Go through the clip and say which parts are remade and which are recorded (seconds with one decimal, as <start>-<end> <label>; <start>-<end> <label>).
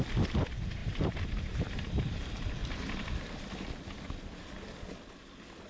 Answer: 0.0-0.8 recorded; 0.8-2.2 remade; 2.2-5.7 recorded